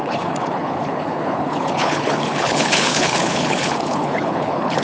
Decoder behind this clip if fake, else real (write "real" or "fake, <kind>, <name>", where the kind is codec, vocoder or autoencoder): fake, codec, HILCodec